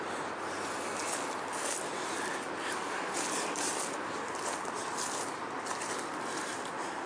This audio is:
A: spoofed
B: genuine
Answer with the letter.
B